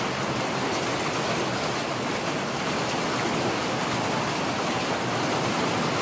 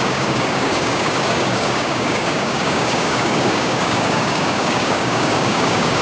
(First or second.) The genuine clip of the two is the first